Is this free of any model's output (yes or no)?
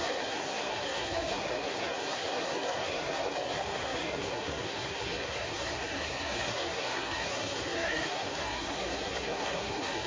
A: no